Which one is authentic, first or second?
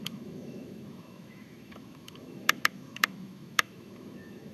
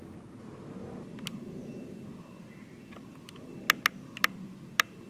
second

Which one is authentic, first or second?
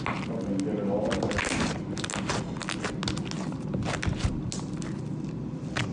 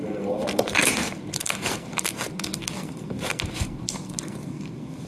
first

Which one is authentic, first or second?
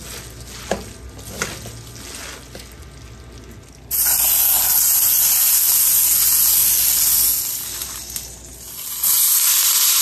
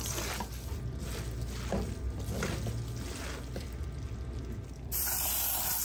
first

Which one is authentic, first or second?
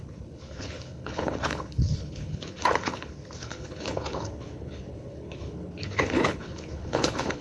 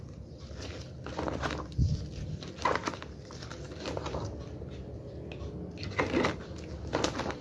second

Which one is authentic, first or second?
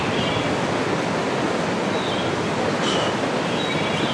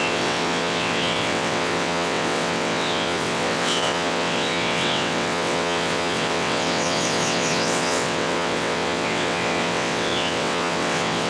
first